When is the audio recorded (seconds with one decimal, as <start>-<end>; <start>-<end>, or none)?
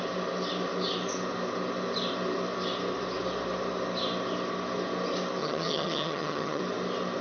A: 0.0-5.4; 6.6-7.2